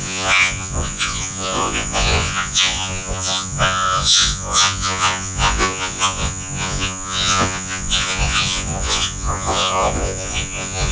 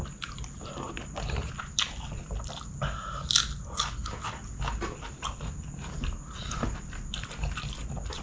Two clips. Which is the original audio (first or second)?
second